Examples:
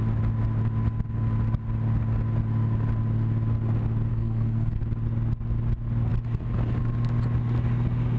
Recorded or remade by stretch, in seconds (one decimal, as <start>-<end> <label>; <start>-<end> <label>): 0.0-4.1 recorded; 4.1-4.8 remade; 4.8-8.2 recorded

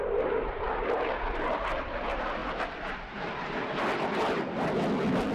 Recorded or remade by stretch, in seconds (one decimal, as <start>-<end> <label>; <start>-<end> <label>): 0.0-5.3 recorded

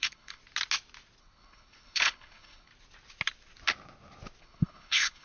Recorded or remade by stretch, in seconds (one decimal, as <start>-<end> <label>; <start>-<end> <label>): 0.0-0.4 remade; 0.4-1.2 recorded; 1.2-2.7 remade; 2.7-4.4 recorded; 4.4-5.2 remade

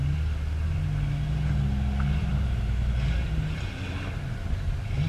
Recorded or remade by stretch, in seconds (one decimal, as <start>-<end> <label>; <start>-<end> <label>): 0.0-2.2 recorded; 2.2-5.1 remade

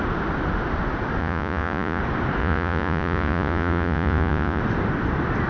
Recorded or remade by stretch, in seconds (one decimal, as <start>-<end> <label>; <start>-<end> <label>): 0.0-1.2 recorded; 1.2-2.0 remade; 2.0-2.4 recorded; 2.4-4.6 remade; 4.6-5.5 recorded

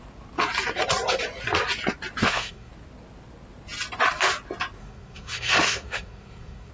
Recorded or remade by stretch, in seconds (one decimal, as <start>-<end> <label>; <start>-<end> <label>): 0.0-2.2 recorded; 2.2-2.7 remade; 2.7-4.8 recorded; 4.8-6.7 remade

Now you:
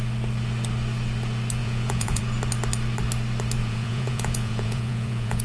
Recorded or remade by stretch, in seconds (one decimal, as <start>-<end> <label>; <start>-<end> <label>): 0.0-1.6 recorded; 1.6-2.2 remade; 2.2-3.6 recorded; 3.6-5.4 remade

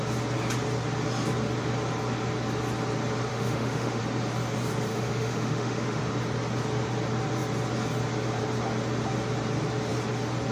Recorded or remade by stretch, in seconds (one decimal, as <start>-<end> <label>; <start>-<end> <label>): 0.0-3.3 recorded; 3.3-4.0 remade; 4.0-4.9 recorded; 4.9-6.0 remade; 6.0-10.5 recorded